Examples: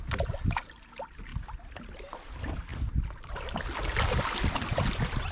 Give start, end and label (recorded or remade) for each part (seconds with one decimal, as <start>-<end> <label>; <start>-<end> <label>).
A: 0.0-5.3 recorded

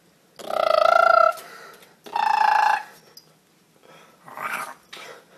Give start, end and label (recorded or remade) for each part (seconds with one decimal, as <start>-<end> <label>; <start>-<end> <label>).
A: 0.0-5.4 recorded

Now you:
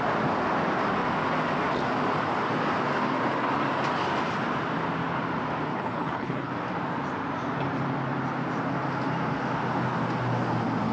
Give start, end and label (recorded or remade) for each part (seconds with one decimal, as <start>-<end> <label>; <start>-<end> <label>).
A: 0.0-5.7 recorded; 5.7-6.5 remade; 6.5-10.9 recorded

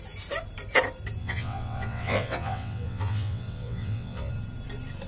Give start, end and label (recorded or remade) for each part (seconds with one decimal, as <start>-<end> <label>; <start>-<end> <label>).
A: 0.0-1.2 recorded; 1.2-4.3 remade; 4.3-5.1 recorded

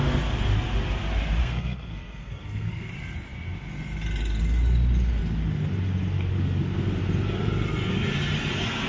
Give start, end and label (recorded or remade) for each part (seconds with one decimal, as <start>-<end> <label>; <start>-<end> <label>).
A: 0.0-1.4 recorded; 1.4-2.9 remade; 2.9-8.9 recorded